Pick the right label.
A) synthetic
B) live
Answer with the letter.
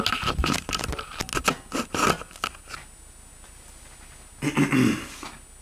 B